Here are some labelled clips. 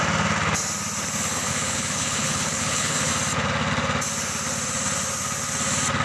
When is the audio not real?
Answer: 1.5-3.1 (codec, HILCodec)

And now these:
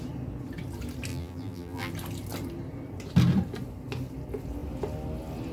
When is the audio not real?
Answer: 1.1-1.9 (vocoder, BigVGAN v2)

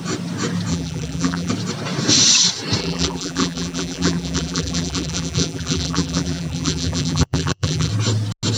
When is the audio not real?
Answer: 0.7-1.5 (vocoder, BigVGAN v2); 2.8-7.9

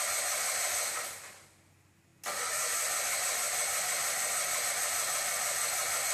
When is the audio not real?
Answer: none